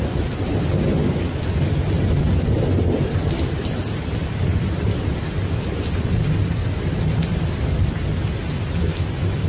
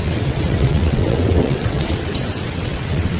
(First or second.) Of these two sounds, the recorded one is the first